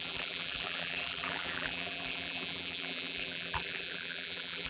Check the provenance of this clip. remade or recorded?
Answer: remade